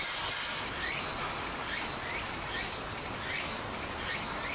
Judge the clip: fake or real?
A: real